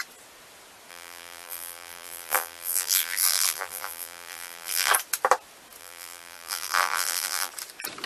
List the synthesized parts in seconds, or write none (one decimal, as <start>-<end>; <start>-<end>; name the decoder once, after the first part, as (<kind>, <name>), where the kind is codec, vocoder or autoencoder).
0.9-4.9 (vocoder, BigVGAN v2); 5.8-7.5

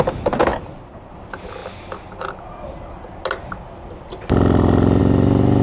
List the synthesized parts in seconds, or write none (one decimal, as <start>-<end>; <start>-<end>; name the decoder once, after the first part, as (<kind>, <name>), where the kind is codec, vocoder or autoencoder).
0.5-1.1 (vocoder, BigVGAN v2)

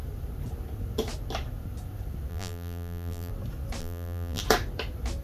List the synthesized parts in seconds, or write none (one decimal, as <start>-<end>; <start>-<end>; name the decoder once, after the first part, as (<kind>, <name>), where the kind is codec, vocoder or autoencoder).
2.3-3.3 (vocoder, BigVGAN v2); 3.8-4.4

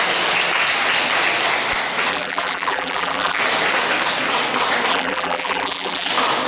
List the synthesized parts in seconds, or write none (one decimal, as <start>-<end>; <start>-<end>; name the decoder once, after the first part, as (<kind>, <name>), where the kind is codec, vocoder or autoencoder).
2.1-3.4 (vocoder, BigVGAN v2); 4.9-6.1

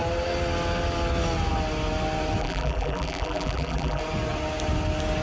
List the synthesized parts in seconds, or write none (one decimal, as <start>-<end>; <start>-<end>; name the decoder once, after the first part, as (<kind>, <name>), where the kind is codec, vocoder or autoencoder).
2.4-4.0 (vocoder, BigVGAN v2)